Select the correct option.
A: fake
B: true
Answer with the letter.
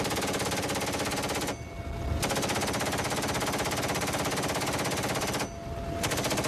B